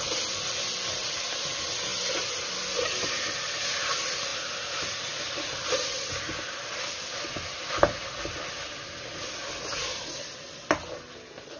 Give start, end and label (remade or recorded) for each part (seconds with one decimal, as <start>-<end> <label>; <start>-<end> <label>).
0.0-11.6 recorded